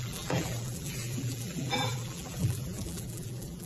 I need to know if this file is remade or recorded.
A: remade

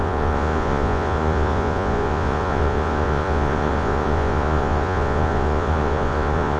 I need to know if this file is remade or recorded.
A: remade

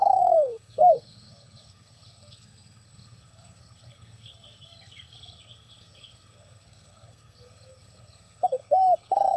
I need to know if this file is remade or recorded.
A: remade